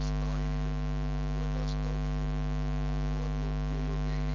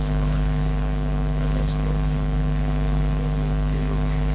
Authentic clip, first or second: first